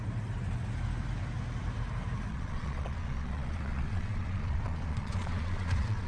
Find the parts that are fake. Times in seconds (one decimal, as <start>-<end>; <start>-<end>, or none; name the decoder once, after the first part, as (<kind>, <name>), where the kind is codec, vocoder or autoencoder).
2.3-6.1 (vocoder, Vocos)